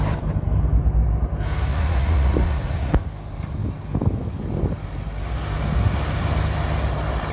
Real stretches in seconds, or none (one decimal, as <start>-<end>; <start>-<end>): 0.0-1.7; 2.9-7.3